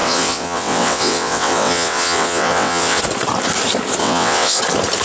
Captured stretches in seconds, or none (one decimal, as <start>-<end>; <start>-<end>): 3.0-4.0; 4.6-5.0